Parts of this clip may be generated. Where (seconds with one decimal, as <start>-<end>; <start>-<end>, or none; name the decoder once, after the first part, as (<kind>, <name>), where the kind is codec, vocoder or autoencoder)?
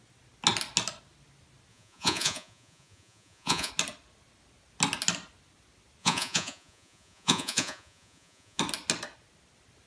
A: 1.7-3.7 (vocoder, Vocos); 6.0-8.6